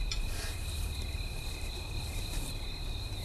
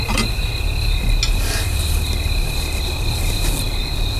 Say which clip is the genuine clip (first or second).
second